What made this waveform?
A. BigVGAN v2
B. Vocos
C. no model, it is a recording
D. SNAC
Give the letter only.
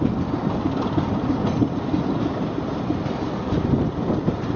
C